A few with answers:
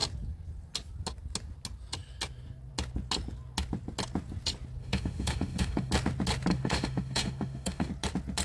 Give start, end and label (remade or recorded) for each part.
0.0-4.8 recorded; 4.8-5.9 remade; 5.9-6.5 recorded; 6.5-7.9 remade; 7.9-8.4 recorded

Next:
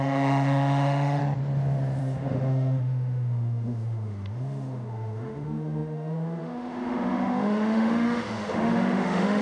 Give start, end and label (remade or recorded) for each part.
0.0-1.2 remade; 1.2-2.0 recorded; 2.0-9.4 remade

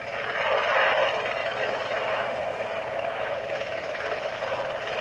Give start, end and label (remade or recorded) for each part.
0.0-1.4 recorded; 1.4-4.4 remade; 4.4-5.0 recorded

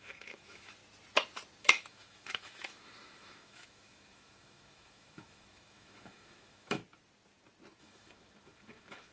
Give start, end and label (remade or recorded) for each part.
0.0-0.8 remade; 0.8-1.6 recorded; 1.6-6.8 remade; 6.8-7.8 recorded; 7.8-9.1 remade

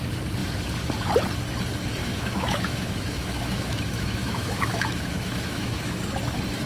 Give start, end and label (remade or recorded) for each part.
0.0-2.0 recorded; 2.0-6.0 remade; 6.0-6.7 recorded

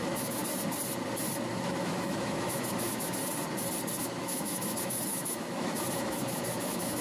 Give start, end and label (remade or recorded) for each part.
0.0-0.4 remade; 0.4-1.5 recorded; 1.5-3.2 remade; 3.2-4.0 recorded; 4.0-7.0 remade